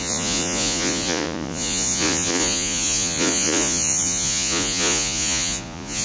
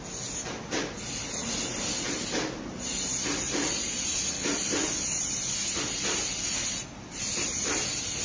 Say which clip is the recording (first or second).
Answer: second